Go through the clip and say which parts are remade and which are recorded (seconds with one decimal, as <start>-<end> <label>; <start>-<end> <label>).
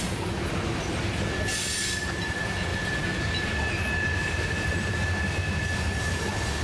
0.0-2.7 recorded; 2.7-3.7 remade; 3.7-4.2 recorded; 4.2-5.1 remade; 5.1-6.6 recorded